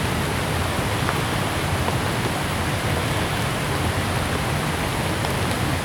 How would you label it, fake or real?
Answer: real